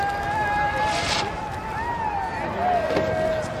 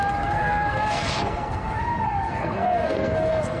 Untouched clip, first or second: first